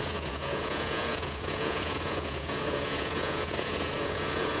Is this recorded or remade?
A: remade